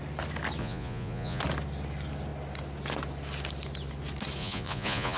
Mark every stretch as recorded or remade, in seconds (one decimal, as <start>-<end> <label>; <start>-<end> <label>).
0.0-0.6 recorded; 0.6-1.4 remade; 1.4-4.4 recorded; 4.4-5.2 remade